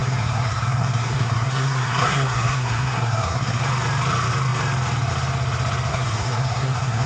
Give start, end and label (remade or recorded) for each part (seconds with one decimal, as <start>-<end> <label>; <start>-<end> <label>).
0.0-3.6 remade; 3.6-5.9 recorded; 5.9-7.1 remade